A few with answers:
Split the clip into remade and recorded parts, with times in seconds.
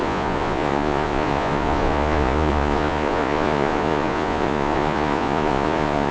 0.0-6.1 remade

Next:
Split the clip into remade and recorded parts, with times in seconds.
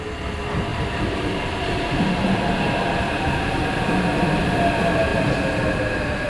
0.0-6.3 recorded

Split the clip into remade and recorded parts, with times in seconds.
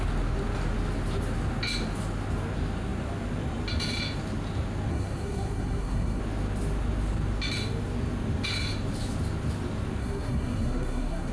0.0-4.9 recorded; 4.9-6.2 remade; 6.2-10.0 recorded; 10.0-11.3 remade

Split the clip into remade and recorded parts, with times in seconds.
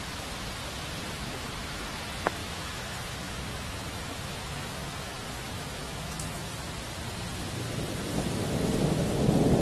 0.0-2.4 recorded; 2.4-6.7 remade; 6.7-9.6 recorded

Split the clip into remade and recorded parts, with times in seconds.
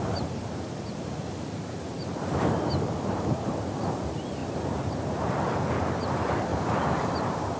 0.0-2.0 recorded; 2.0-3.2 remade; 3.2-4.4 recorded; 4.4-5.2 remade; 5.2-6.5 recorded; 6.5-7.6 remade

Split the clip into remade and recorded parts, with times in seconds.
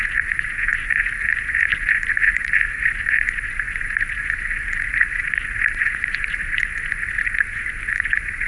0.0-8.5 remade